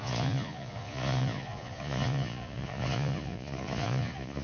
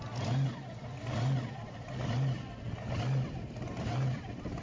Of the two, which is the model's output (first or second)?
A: first